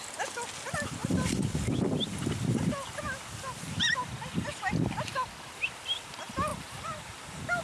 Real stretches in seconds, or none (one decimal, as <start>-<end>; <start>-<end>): 0.0-6.5